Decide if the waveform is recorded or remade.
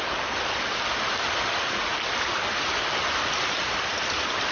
recorded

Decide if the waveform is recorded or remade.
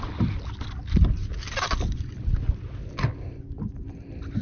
recorded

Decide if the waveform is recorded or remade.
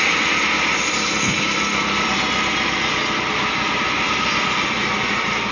recorded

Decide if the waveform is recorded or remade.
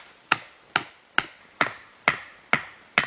recorded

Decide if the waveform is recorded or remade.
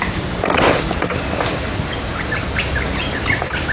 recorded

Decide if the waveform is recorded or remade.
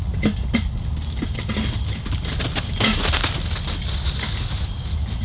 recorded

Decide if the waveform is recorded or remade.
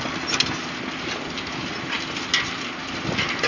recorded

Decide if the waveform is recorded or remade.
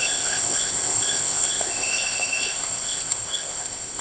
remade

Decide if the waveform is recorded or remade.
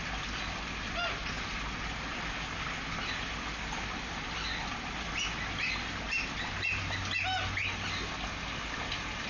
recorded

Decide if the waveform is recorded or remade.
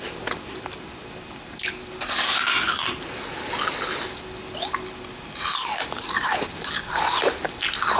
recorded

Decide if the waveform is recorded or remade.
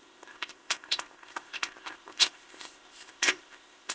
remade